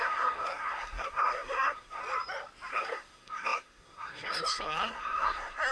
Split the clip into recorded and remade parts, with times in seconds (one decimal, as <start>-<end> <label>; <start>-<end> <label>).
0.0-2.0 remade; 2.0-2.7 recorded; 2.7-5.7 remade